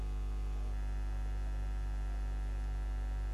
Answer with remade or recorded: recorded